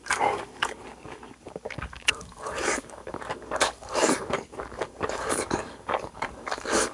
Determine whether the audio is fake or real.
fake